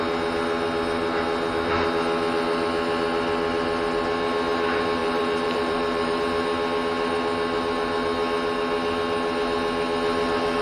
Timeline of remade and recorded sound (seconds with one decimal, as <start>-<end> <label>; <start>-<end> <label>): 0.0-5.0 recorded; 5.0-6.2 remade; 6.2-10.6 recorded

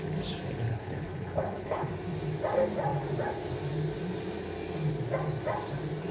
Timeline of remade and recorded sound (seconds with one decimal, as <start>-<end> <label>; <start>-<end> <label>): 0.0-0.7 recorded; 0.7-1.9 remade; 1.9-6.1 recorded